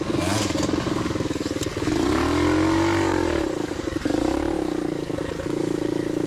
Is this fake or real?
fake